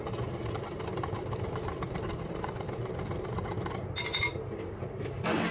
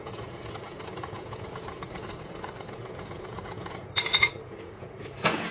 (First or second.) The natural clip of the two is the first